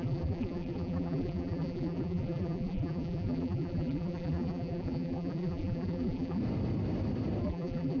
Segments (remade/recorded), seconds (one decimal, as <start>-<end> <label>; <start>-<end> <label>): 0.0-6.4 remade; 6.4-7.4 recorded; 7.4-8.0 remade